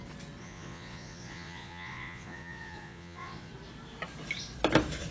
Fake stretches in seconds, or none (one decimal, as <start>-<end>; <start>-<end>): 0.4-3.5